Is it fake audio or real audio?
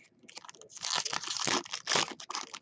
real